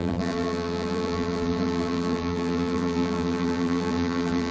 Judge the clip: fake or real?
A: fake